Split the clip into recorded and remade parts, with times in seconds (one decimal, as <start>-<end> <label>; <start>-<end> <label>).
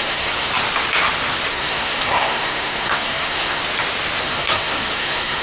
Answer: 0.0-0.5 remade; 0.5-1.5 recorded; 1.5-3.6 remade; 3.6-4.2 recorded; 4.2-5.4 remade